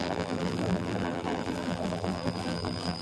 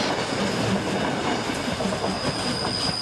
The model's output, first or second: first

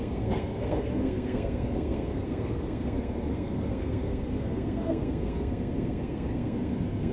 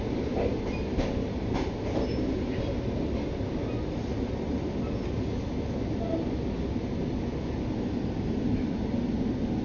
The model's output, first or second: first